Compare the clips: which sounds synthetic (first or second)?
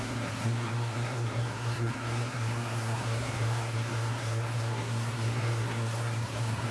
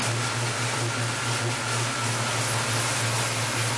first